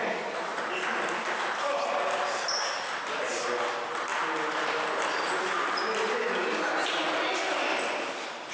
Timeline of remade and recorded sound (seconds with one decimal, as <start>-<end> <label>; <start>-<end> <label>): 0.0-7.7 recorded; 7.7-8.5 remade